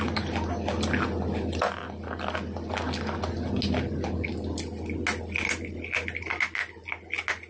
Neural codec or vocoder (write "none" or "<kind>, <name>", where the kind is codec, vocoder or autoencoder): none